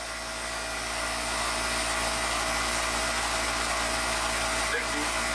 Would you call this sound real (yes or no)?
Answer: yes